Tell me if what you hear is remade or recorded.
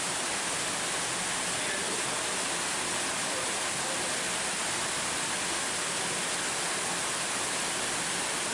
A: recorded